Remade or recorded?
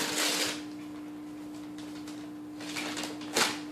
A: recorded